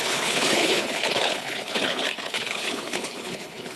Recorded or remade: remade